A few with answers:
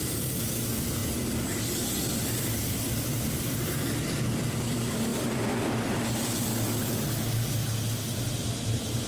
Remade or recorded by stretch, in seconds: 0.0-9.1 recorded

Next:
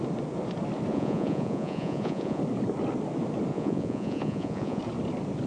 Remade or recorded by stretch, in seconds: 0.0-0.9 recorded; 0.9-2.4 remade; 2.4-3.5 recorded; 3.5-4.8 remade; 4.8-5.5 recorded

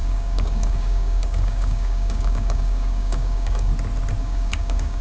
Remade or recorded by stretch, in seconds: 0.0-3.7 remade; 3.7-4.2 recorded; 4.2-5.0 remade

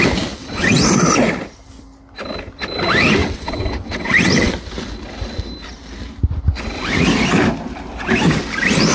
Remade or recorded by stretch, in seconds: 0.0-0.4 recorded; 0.4-0.9 remade; 0.9-3.2 recorded; 3.2-4.5 remade; 4.5-8.9 recorded

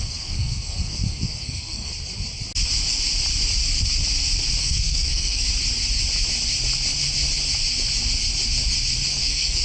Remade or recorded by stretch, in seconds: 0.0-1.9 remade; 1.9-4.6 recorded; 4.6-5.5 remade; 5.5-9.2 recorded; 9.2-9.6 remade

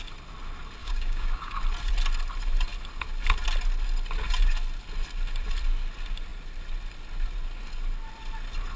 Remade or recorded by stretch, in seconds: 0.0-0.8 recorded; 0.8-1.6 remade; 1.6-8.8 recorded

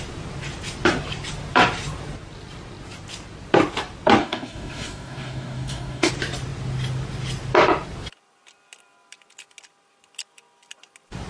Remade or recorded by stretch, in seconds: 0.0-4.2 recorded; 4.2-6.1 remade; 6.1-11.3 recorded